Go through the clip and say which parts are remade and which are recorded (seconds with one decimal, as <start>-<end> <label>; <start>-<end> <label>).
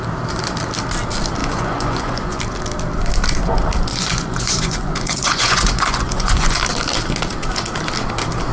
0.0-1.4 recorded; 1.4-2.4 remade; 2.4-3.9 recorded; 3.9-6.6 remade; 6.6-8.5 recorded